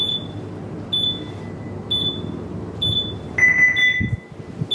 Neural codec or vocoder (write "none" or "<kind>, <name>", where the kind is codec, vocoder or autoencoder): none